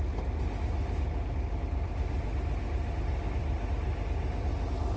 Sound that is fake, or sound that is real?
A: real